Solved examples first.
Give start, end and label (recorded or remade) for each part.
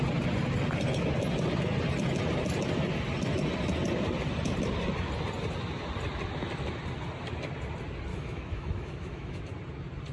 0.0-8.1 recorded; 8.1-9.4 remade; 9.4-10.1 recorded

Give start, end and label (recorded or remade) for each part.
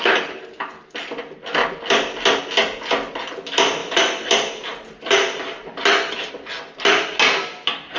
0.0-8.0 recorded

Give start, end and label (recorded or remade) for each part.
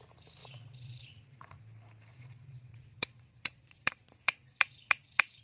0.0-0.4 recorded; 0.4-1.6 remade; 1.6-2.1 recorded; 2.1-5.4 remade